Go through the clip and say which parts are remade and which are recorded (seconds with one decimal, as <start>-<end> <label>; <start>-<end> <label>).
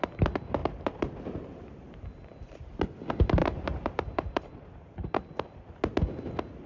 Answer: 0.0-0.6 recorded; 0.6-2.8 remade; 2.8-3.4 recorded; 3.4-5.7 remade; 5.7-6.7 recorded